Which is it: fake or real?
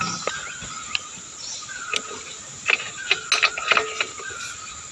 real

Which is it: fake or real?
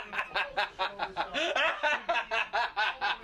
real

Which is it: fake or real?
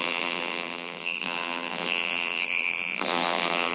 fake